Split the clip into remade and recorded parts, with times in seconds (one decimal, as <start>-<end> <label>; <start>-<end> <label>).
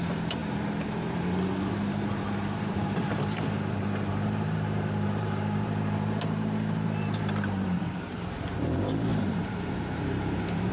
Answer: 0.0-0.4 remade; 0.4-1.7 recorded; 1.7-10.7 remade